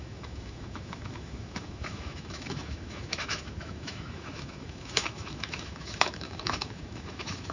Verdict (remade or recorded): remade